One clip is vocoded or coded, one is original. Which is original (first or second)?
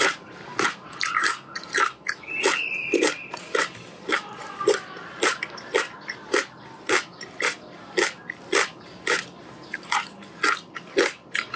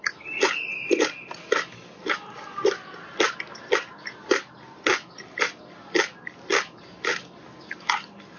second